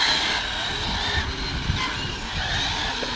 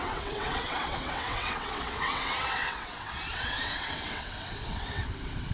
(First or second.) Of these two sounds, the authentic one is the first